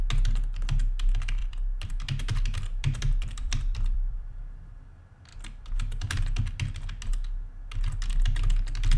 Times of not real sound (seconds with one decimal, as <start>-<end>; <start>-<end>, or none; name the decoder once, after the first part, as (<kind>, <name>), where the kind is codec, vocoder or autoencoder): 1.4-1.9 (vocoder, BigVGAN v2); 2.7-4.7